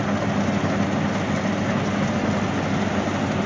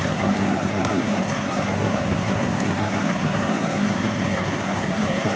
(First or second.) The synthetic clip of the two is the second